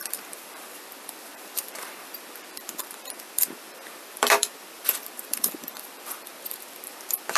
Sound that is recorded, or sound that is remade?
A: remade